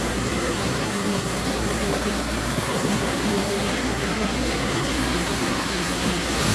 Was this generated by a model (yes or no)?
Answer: yes